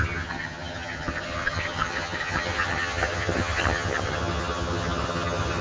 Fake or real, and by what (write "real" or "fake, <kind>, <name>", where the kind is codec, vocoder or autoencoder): fake, vocoder, HiFi-GAN